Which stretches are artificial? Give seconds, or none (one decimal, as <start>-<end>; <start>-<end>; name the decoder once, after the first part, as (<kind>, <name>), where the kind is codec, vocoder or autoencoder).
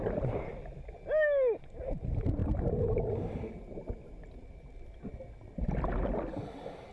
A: 2.4-5.7 (vocoder, BigVGAN v2)